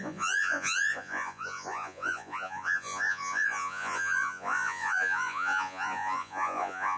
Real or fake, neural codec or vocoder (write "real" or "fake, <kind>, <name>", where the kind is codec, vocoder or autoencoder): fake, vocoder, Vocos